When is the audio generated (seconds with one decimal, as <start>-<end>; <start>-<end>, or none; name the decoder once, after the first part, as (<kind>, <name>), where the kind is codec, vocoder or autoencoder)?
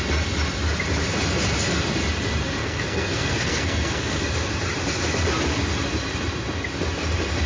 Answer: 2.6-4.2 (codec, SNAC)